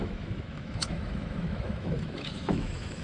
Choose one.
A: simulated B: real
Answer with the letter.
A